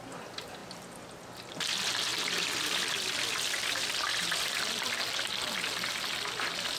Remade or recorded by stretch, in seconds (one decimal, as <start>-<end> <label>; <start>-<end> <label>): 0.0-0.6 recorded; 0.6-1.1 remade; 1.1-2.1 recorded; 2.1-3.3 remade; 3.3-4.1 recorded; 4.1-5.0 remade; 5.0-6.8 recorded